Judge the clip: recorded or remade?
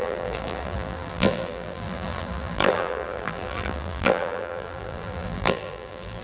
remade